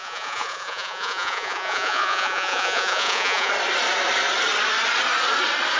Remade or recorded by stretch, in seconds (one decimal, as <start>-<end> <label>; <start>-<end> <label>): 0.0-3.5 remade; 3.5-5.8 recorded